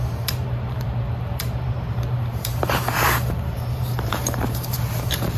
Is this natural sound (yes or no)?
no